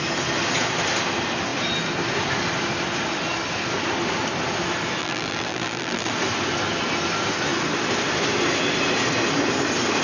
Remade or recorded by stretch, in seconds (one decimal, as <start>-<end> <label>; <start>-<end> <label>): 0.0-5.0 recorded; 5.0-6.1 remade; 6.1-10.0 recorded